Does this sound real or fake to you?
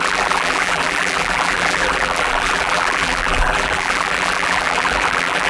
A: fake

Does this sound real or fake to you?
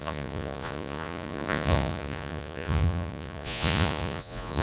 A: fake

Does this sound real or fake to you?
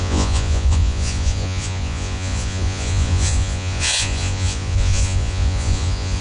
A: fake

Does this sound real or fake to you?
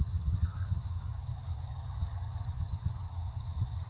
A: fake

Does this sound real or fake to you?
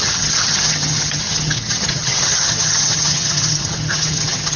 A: fake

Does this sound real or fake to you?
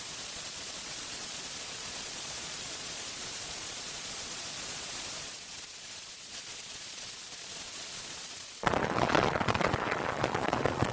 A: fake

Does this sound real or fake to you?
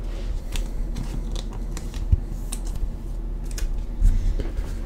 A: real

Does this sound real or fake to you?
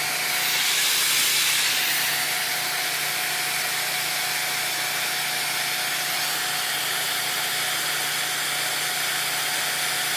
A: real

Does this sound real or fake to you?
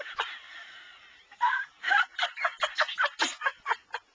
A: real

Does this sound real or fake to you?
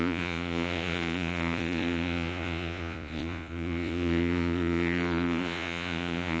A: fake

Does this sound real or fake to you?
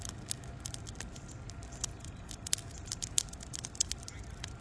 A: real